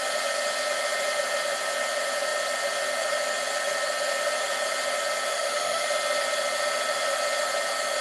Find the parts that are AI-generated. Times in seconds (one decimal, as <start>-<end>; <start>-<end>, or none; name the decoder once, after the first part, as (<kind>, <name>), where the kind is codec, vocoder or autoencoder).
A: 5.3-5.9 (autoencoder, DAC-VAE)